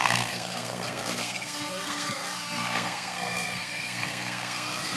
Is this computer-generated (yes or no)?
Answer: yes